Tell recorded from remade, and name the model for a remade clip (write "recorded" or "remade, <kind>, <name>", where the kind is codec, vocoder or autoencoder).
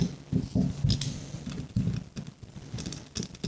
recorded